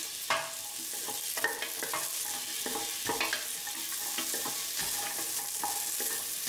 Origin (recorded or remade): recorded